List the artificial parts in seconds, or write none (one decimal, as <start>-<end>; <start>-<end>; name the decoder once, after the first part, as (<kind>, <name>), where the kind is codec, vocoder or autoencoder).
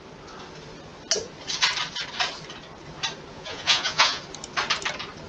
3.3-4.2 (vocoder, Vocos)